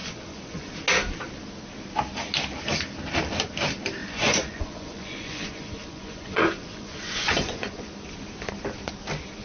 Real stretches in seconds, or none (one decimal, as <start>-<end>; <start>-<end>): 0.7-4.0; 7.9-9.4